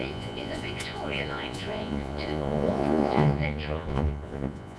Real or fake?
fake